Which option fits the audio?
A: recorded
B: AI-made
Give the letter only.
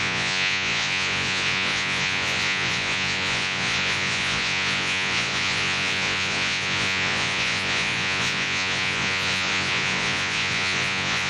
B